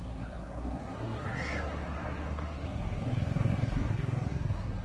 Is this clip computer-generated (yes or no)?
yes